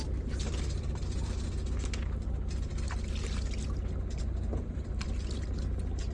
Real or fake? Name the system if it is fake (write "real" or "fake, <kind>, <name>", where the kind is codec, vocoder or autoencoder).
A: fake, vocoder, BigVGAN v2